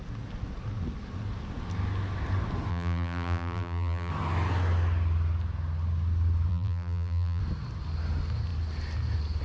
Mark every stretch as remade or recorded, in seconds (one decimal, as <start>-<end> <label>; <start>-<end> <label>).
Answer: 0.0-2.7 recorded; 2.7-4.1 remade; 4.1-6.5 recorded; 6.5-7.4 remade; 7.4-9.4 recorded

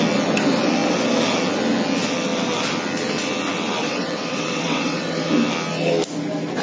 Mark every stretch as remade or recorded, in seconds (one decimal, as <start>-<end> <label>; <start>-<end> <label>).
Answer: 0.0-3.8 recorded; 3.8-5.3 remade; 5.3-6.6 recorded

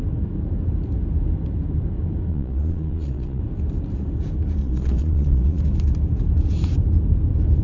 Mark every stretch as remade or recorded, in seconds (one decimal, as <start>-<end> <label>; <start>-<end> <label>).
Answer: 0.0-2.3 recorded; 2.3-3.4 remade; 3.4-4.6 recorded; 4.6-5.6 remade; 5.6-7.6 recorded

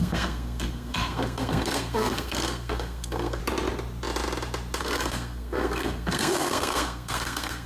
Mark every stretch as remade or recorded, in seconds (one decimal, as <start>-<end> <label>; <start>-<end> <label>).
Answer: 0.0-3.4 remade; 3.4-4.8 recorded; 4.8-7.7 remade

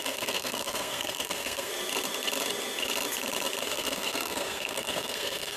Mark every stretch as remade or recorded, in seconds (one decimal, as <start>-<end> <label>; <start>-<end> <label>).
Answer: 0.0-1.7 remade; 1.7-3.6 recorded; 3.6-5.6 remade